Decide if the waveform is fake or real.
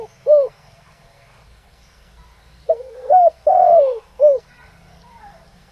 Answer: fake